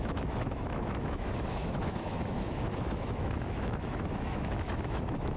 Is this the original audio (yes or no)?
no